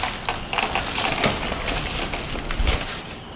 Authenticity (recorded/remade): recorded